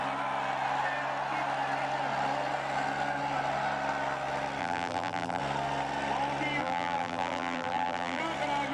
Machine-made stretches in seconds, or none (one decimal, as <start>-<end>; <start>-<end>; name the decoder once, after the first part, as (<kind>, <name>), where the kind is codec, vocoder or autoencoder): 4.6-5.4 (vocoder, BigVGAN v2); 6.6-8.2